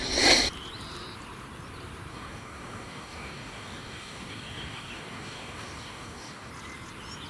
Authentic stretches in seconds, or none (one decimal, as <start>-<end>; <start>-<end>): 0.0-2.1; 6.5-7.3